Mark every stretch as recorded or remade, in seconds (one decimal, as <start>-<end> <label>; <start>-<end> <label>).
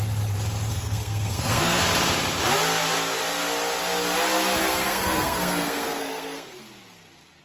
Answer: 0.0-0.7 recorded; 0.7-1.8 remade; 1.8-4.6 recorded; 4.6-6.6 remade; 6.6-7.4 recorded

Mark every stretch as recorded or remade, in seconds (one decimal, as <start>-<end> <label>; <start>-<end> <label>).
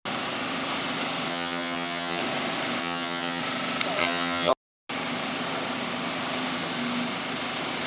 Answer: 0.0-1.3 recorded; 1.3-2.2 remade; 2.2-2.8 recorded; 2.8-3.4 remade; 3.4-4.0 recorded; 4.0-4.5 remade; 4.5-7.9 recorded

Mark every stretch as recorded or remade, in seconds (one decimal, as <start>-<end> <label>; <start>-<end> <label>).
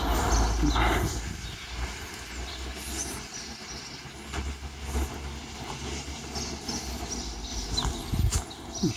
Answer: 0.0-7.5 recorded; 7.5-8.2 remade; 8.2-9.0 recorded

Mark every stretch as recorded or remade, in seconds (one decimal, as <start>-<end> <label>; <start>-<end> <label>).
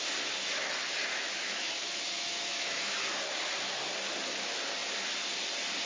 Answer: 0.0-1.1 recorded; 1.1-3.0 remade; 3.0-5.9 recorded